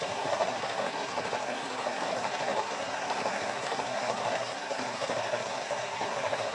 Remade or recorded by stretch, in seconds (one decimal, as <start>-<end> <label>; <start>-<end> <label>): 0.0-6.5 remade